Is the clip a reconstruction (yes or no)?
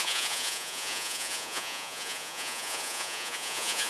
yes